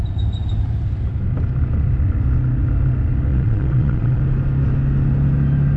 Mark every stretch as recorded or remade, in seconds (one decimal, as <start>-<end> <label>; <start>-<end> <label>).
0.0-3.3 recorded; 3.3-4.2 remade; 4.2-5.8 recorded